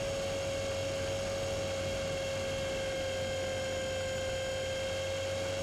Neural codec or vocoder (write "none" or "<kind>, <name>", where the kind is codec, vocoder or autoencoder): none